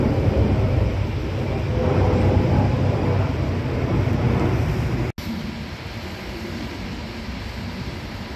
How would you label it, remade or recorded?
recorded